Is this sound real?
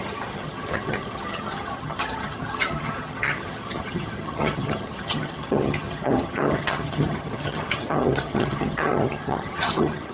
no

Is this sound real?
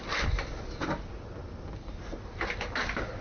yes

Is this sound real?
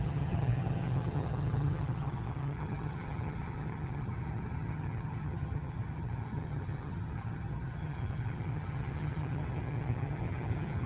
no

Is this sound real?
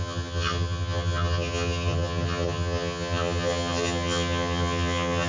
no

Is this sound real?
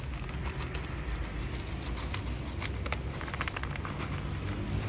yes